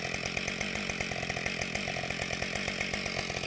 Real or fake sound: real